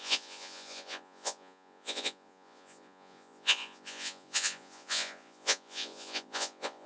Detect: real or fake fake